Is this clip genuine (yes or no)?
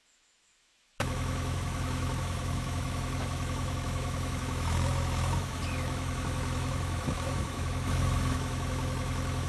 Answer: no